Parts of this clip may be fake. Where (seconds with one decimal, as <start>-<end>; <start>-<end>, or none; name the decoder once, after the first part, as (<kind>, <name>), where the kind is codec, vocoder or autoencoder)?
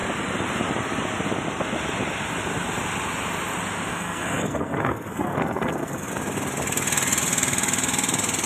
3.9-6.1 (codec, SNAC)